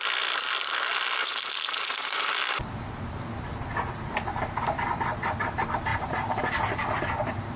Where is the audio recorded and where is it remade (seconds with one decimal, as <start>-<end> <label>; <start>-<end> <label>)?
0.0-5.9 recorded; 5.9-6.6 remade; 6.6-7.6 recorded